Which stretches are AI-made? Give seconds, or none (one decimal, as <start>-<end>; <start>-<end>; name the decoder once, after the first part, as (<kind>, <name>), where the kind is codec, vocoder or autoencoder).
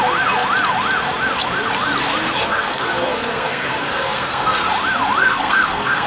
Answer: 2.4-4.7 (codec, SNAC); 5.2-6.1